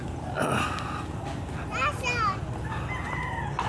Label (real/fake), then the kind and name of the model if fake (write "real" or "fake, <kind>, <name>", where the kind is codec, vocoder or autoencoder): real